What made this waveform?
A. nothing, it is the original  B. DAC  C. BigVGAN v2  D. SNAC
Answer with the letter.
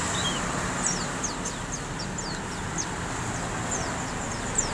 A